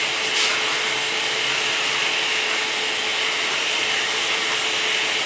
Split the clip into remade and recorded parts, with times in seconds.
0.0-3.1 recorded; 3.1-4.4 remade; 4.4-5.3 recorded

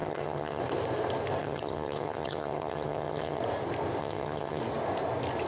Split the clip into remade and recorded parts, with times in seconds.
0.0-0.6 remade; 0.6-1.4 recorded; 1.4-3.4 remade; 3.4-4.0 recorded; 4.0-4.6 remade; 4.6-5.5 recorded

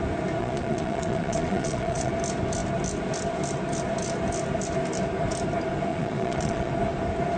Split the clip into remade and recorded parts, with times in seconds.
0.0-0.4 recorded; 0.4-2.1 remade; 2.1-5.9 recorded; 5.9-6.7 remade; 6.7-7.4 recorded

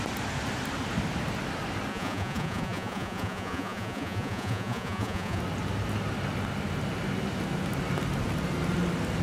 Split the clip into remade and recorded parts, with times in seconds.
0.0-1.9 recorded; 1.9-5.4 remade; 5.4-9.2 recorded

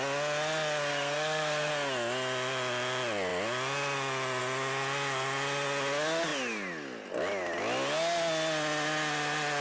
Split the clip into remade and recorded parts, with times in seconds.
0.0-0.9 recorded; 0.9-1.7 remade; 1.7-9.6 recorded

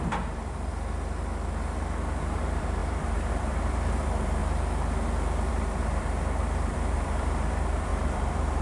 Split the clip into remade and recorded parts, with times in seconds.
0.0-0.7 remade; 0.7-2.2 recorded; 2.2-4.4 remade; 4.4-5.5 recorded; 5.5-8.6 remade